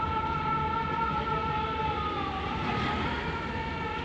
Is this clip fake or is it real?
real